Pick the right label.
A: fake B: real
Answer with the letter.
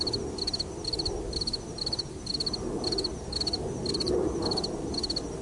B